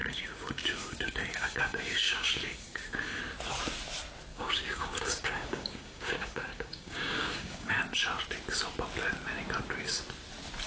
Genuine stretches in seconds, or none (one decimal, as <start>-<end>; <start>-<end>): 3.2-4.3; 7.7-10.7